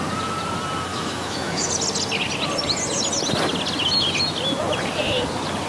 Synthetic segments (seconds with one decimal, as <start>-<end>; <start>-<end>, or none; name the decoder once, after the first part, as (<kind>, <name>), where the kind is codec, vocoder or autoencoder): 0.9-1.7 (autoencoder, DAC-VAE)